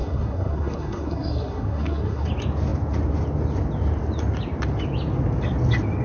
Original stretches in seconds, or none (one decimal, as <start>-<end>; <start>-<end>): 2.3-6.0